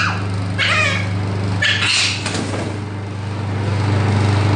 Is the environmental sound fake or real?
real